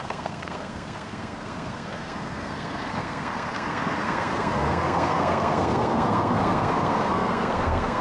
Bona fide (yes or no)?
no